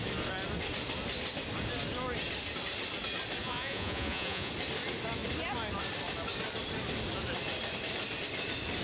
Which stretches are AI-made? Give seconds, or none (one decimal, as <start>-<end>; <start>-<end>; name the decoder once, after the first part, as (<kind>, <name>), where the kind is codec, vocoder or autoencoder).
3.4-4.5 (vocoder, Vocos)